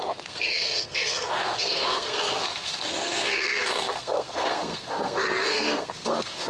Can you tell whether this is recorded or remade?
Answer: remade